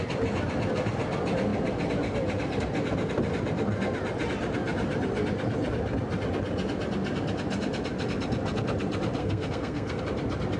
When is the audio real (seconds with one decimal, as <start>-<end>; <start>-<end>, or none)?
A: 0.0-9.2; 10.0-10.6